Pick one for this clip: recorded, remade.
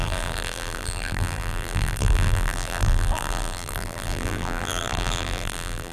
remade